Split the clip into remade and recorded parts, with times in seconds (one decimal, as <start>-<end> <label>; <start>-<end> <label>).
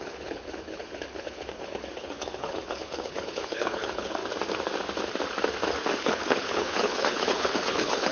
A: 0.0-4.2 remade; 4.2-6.0 recorded; 6.0-8.1 remade